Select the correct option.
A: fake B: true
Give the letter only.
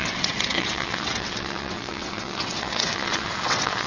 A